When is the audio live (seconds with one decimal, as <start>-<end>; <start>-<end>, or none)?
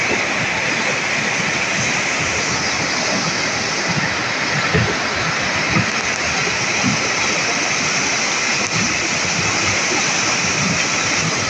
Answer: 0.0-11.5